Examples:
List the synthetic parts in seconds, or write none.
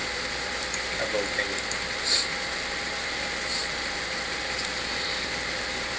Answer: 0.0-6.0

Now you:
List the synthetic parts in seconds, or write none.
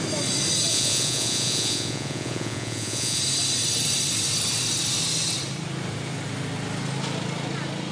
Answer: 0.7-3.2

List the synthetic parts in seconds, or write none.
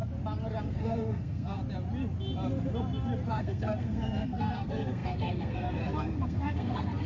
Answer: 0.6-1.6; 3.3-7.1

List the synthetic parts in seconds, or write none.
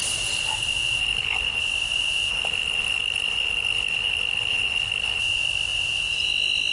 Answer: 1.0-1.6; 2.3-5.2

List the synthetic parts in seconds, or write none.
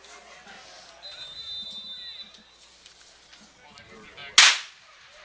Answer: none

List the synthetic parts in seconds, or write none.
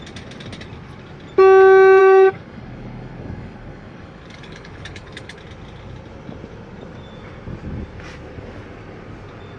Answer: 2.0-5.4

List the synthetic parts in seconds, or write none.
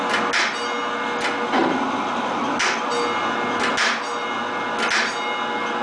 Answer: none